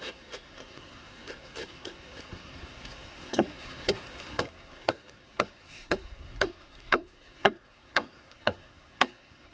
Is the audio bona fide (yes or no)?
no